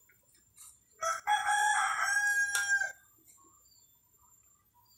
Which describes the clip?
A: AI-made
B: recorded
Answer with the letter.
B